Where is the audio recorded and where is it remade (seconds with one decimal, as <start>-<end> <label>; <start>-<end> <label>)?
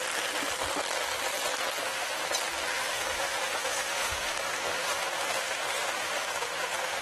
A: 0.0-1.8 recorded; 1.8-2.3 remade; 2.3-2.8 recorded; 2.8-7.0 remade